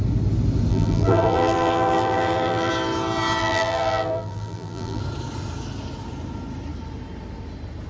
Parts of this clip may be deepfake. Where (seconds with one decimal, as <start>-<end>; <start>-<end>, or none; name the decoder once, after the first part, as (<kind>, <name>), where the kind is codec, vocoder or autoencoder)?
0.7-2.7 (vocoder, BigVGAN v2); 3.4-5.0